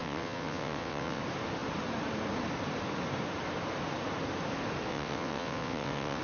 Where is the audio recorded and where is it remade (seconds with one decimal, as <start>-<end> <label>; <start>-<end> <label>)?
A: 0.0-1.2 remade; 1.2-4.9 recorded; 4.9-6.2 remade